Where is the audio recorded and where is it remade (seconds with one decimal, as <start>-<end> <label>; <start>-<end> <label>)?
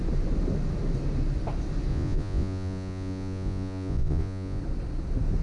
0.0-1.9 recorded; 1.9-4.6 remade; 4.6-5.4 recorded